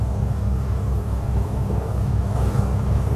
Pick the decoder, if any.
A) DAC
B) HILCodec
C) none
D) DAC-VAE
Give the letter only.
A